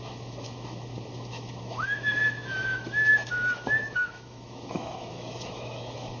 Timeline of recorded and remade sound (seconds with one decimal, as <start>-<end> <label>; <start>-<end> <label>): 0.0-6.2 remade